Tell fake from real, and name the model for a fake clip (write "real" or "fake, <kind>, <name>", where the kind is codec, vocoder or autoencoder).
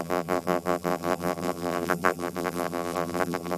fake, vocoder, BigVGAN v2